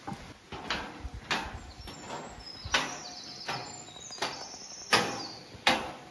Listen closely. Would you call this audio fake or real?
real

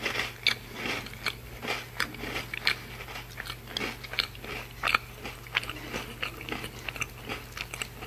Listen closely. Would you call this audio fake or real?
real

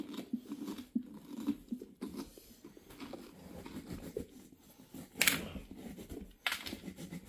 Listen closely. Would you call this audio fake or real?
real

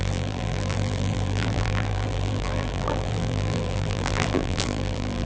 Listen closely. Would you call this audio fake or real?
fake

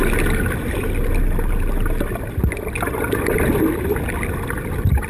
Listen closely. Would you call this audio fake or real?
real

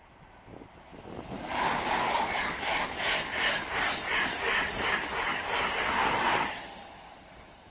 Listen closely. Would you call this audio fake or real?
real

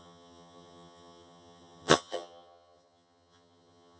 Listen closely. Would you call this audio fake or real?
fake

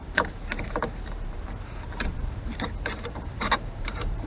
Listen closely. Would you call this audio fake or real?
fake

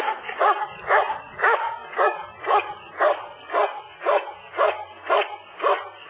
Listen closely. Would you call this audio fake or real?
real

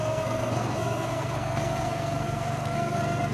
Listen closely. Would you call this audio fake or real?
fake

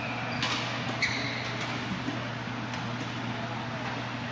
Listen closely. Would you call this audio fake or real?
real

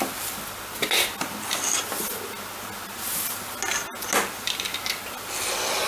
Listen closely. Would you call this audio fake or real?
real